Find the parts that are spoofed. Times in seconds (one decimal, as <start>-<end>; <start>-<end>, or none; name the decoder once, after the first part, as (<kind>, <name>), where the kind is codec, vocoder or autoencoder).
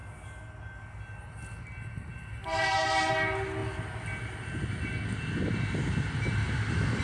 2.4-3.1 (vocoder, BigVGAN v2)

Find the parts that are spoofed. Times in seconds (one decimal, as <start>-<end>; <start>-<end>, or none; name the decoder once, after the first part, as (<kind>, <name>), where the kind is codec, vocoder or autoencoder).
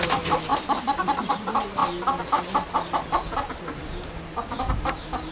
0.5-1.3 (vocoder, BigVGAN v2)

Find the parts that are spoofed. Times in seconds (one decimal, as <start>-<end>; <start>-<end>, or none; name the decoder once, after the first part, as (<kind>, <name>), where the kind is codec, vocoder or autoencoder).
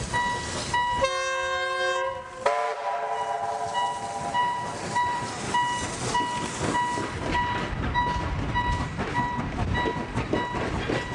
4.4-5.2 (vocoder, BigVGAN v2)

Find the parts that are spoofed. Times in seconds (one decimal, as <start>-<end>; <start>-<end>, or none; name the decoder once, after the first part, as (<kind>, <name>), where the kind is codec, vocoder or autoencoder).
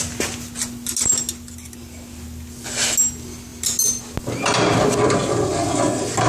none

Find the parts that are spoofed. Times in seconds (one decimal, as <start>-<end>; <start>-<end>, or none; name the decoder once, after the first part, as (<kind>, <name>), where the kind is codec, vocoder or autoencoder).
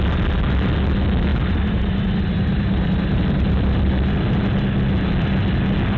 1.3-3.9 (vocoder, BigVGAN v2)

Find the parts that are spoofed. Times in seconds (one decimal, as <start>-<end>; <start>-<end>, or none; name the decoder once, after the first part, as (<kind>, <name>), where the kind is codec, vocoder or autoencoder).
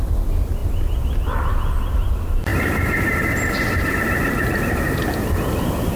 none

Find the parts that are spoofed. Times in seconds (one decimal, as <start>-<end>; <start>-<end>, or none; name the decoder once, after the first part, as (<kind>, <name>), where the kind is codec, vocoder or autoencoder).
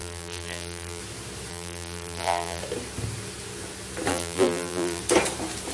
0.0-1.0 (vocoder, BigVGAN v2); 1.5-2.6; 4.1-5.0